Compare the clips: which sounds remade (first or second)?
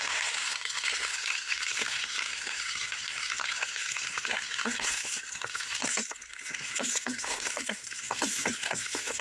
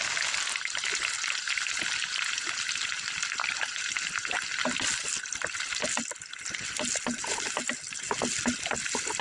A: first